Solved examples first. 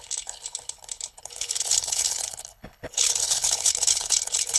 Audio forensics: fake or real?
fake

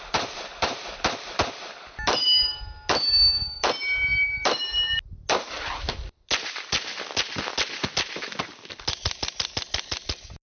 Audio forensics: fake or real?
real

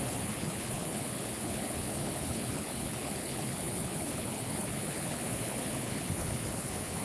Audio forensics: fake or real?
fake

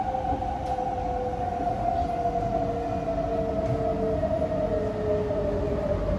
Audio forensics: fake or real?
real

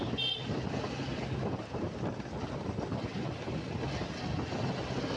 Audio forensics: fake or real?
real